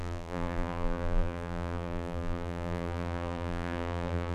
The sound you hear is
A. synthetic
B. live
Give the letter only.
A